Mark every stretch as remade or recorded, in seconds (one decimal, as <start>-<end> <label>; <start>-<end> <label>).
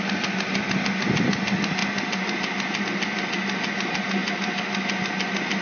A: 0.0-5.6 recorded